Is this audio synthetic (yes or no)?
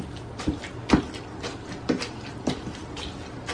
no